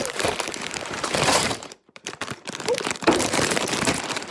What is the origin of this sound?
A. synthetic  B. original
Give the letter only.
A